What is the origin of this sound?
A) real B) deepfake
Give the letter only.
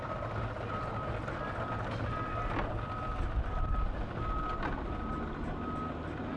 A